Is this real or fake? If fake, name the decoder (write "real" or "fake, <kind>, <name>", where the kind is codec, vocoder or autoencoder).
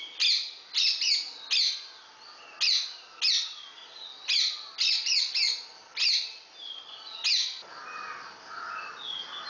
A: real